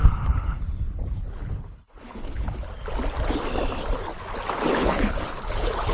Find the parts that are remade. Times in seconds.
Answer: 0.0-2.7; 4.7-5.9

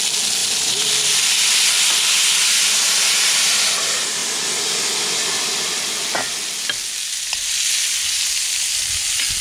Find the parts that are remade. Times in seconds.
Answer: 0.4-1.1